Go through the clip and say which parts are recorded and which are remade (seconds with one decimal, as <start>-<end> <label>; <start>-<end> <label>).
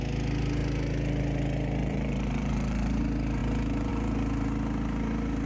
0.0-1.8 recorded; 1.8-3.0 remade; 3.0-5.5 recorded